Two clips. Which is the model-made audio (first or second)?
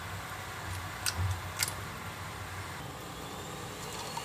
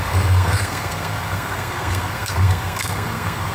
second